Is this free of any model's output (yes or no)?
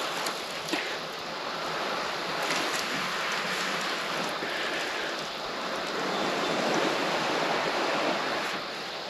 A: yes